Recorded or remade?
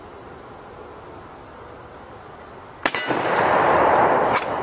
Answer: recorded